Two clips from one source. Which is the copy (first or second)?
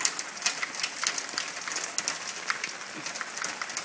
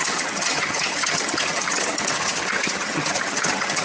second